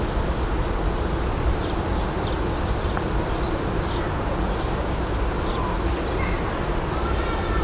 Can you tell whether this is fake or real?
real